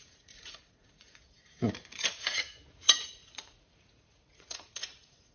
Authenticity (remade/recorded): remade